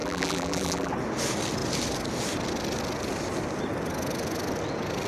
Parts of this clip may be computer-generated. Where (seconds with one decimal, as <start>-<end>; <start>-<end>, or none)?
0.0-0.9